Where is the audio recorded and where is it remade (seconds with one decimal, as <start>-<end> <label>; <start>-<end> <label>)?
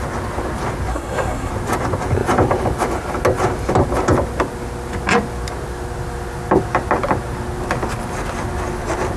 0.0-0.9 recorded; 0.9-1.5 remade; 1.5-9.2 recorded